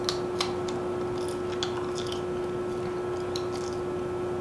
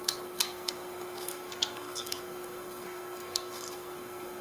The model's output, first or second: second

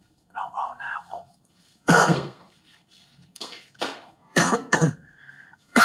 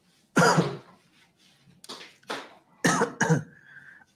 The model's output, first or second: first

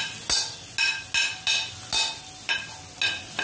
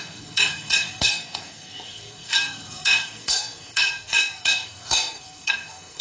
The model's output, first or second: second